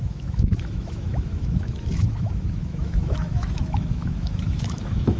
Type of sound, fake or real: fake